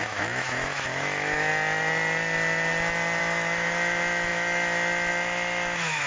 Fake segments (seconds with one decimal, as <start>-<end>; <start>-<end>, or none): 0.0-1.5; 3.2-6.1